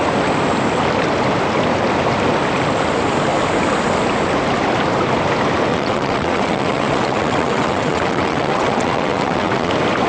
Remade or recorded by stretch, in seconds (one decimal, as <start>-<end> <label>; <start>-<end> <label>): 0.0-5.7 recorded; 5.7-9.7 remade; 9.7-10.1 recorded

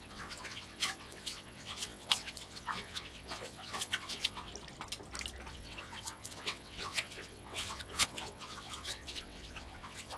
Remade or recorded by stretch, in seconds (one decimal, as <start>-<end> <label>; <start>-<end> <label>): 0.0-4.5 remade; 4.5-5.5 recorded; 5.5-10.2 remade